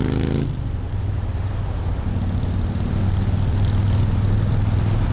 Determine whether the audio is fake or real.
real